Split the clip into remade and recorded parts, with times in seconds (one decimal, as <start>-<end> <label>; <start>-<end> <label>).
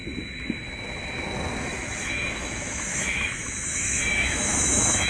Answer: 0.0-1.7 recorded; 1.7-5.1 remade